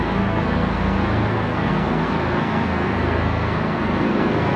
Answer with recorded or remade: remade